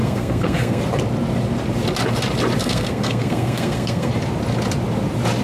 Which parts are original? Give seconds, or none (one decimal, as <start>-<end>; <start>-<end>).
0.8-2.6; 4.1-5.4